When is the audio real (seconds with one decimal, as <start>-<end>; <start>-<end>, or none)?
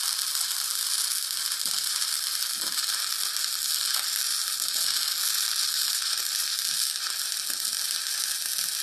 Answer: 0.0-8.8